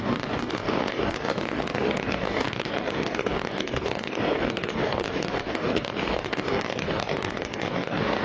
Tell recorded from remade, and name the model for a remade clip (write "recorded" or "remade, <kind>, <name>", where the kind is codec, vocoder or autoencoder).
remade, codec, DAC